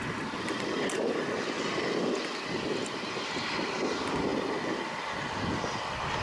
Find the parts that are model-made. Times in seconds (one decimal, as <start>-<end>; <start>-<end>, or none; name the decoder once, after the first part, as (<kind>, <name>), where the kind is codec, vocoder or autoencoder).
none